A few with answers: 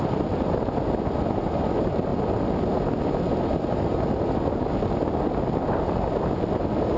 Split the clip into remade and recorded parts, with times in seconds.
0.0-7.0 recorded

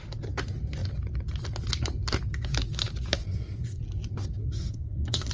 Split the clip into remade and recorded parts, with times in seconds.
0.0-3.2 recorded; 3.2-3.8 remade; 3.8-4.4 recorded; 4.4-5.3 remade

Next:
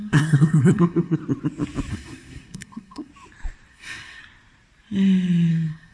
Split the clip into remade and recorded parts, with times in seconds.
0.0-1.2 remade; 1.2-1.9 recorded; 1.9-3.1 remade; 3.1-3.7 recorded; 3.7-4.2 remade; 4.2-5.5 recorded; 5.5-5.9 remade